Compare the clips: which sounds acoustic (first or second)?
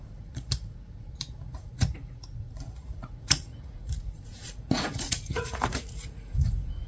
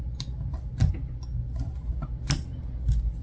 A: second